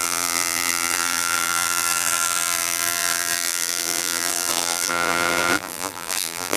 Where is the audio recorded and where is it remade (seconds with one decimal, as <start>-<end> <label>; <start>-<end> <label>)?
0.0-6.6 remade